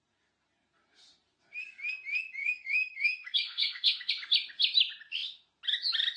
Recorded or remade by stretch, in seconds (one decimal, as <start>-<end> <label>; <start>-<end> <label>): 0.0-2.4 recorded; 2.4-4.1 remade; 4.1-6.2 recorded